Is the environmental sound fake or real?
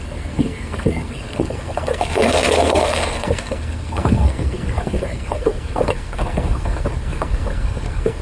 fake